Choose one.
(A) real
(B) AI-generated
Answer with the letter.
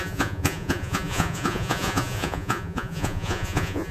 B